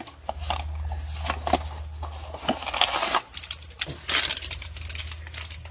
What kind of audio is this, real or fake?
real